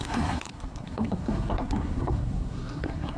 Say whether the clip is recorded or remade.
remade